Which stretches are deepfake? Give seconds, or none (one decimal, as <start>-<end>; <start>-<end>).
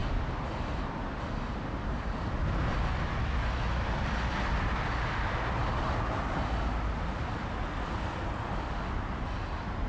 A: none